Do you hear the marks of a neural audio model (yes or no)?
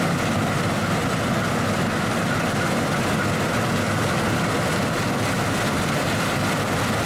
no